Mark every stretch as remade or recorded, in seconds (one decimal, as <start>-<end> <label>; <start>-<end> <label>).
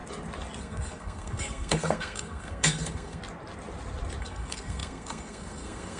0.0-0.6 recorded; 0.6-3.2 remade; 3.2-4.2 recorded; 4.2-6.0 remade